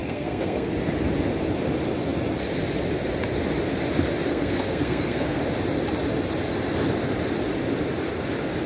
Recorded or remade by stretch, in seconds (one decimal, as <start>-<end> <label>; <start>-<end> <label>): 0.0-0.7 remade; 0.7-4.3 recorded; 4.3-5.4 remade; 5.4-8.7 recorded